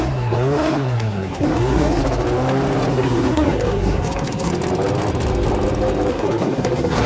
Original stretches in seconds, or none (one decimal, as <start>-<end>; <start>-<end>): 2.0-2.9; 4.5-6.1